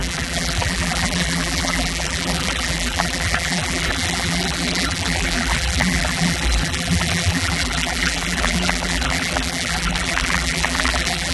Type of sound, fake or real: fake